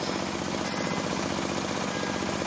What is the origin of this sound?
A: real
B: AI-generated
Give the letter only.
A